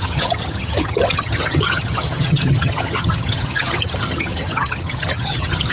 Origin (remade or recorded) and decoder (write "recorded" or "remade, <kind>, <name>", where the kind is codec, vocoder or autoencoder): remade, vocoder, HiFi-GAN